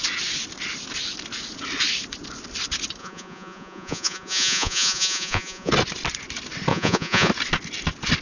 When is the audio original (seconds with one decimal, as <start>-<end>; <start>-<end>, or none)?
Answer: 0.0-3.0; 5.7-6.7; 7.3-8.2